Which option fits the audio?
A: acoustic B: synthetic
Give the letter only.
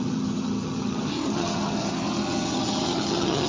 B